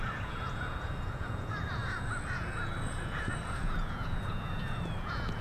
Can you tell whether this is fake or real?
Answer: fake